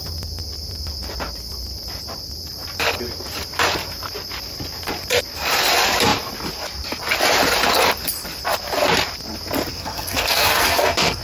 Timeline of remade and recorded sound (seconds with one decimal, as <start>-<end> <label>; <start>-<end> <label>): 0.0-9.7 recorded; 9.7-11.2 remade